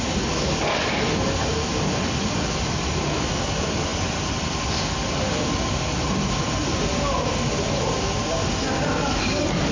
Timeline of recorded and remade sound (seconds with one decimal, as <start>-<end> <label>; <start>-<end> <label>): 0.0-9.7 recorded